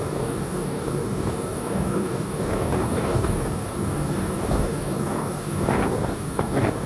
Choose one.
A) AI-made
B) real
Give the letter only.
A